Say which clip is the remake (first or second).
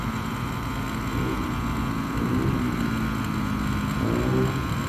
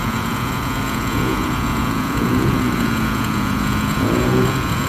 second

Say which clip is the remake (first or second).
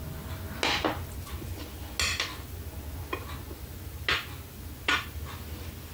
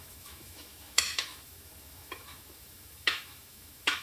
second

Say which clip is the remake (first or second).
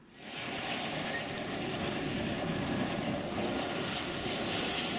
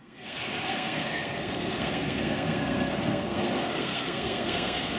second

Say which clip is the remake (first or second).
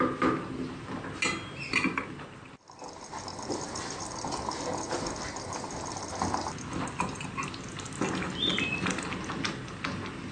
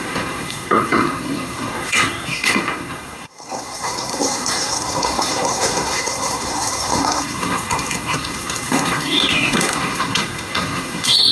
second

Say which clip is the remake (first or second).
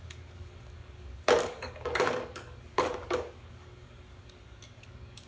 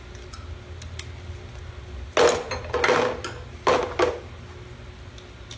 first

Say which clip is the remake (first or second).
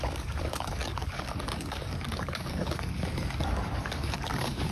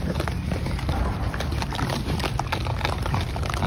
first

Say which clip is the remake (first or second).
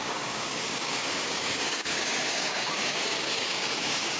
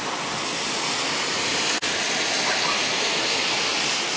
first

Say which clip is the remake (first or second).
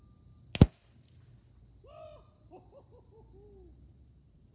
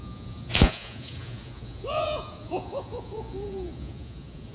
second